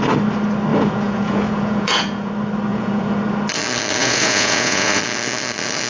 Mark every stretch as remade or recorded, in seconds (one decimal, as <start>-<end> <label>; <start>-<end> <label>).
0.0-0.7 recorded; 0.7-2.3 remade; 2.3-2.7 recorded; 2.7-3.2 remade; 3.2-4.0 recorded; 4.0-5.0 remade; 5.0-5.9 recorded